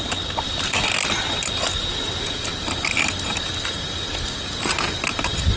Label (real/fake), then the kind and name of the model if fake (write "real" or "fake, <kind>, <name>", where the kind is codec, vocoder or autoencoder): real